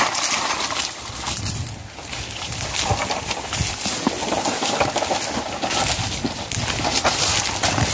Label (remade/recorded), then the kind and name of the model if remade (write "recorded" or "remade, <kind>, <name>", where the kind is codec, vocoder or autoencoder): recorded